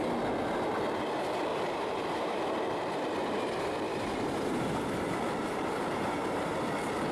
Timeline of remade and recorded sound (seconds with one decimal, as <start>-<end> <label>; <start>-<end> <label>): 0.0-1.5 recorded; 1.5-2.4 remade; 2.4-3.9 recorded; 3.9-6.6 remade; 6.6-7.1 recorded